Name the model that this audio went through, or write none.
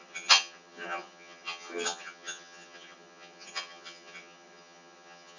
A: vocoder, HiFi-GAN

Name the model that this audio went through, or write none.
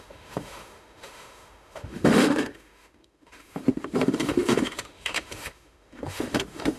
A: autoencoder, DAC-VAE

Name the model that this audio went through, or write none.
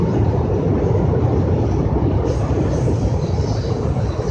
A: none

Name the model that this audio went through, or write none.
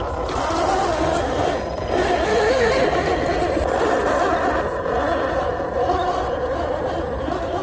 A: none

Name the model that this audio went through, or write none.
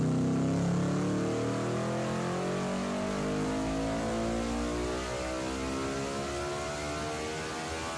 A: none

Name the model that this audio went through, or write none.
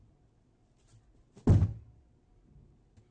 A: none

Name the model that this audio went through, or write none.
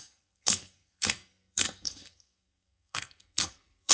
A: codec, SNAC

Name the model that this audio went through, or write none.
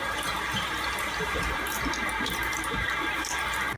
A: vocoder, BigVGAN v2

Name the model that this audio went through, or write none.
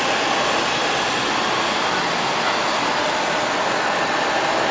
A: none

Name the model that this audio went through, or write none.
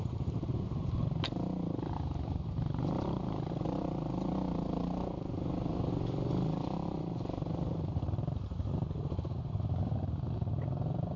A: none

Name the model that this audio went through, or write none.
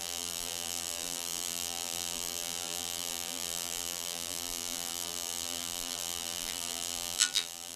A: vocoder, BigVGAN v2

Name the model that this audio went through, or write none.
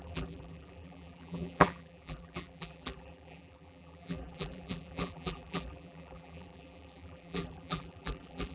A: vocoder, BigVGAN v2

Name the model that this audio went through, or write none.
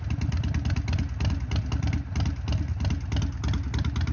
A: none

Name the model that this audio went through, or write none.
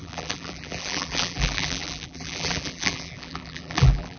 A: vocoder, BigVGAN v2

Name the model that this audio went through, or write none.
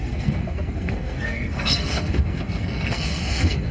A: codec, SNAC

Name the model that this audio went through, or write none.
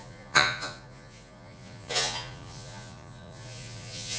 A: vocoder, Vocos